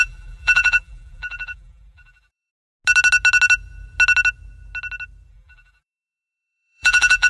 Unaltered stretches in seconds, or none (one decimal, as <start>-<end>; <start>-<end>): 2.5-5.3